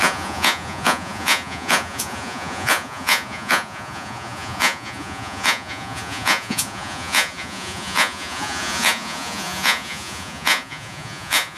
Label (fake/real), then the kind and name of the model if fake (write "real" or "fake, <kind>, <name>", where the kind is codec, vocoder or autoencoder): fake, vocoder, Vocos